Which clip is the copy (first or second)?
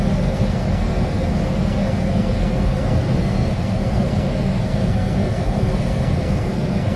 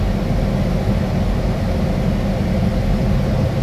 first